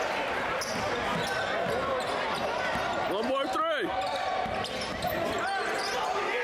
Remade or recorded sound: recorded